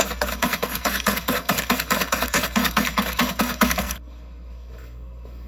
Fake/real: fake